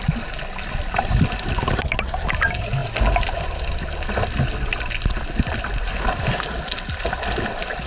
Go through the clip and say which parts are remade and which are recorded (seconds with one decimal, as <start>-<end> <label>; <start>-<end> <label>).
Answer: 0.0-7.9 recorded